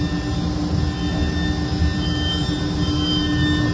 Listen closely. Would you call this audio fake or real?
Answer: real